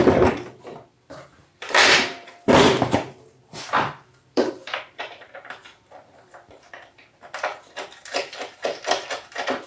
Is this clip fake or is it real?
fake